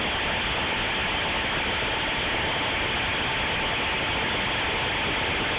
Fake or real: real